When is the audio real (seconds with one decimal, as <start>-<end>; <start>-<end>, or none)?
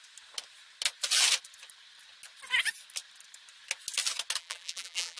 0.0-4.4